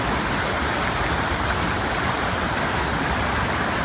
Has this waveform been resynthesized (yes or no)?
no